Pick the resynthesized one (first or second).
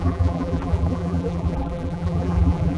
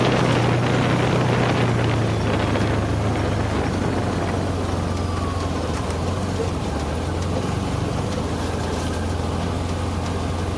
first